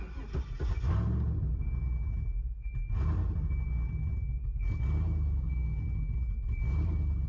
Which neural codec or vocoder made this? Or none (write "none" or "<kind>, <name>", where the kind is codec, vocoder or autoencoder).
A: none